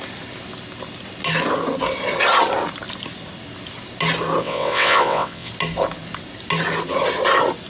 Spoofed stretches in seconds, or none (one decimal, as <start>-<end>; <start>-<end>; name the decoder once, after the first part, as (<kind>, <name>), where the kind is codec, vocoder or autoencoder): 4.4-5.5 (vocoder, WaveNeXt)